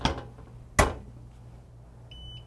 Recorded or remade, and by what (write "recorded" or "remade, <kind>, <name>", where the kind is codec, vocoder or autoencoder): recorded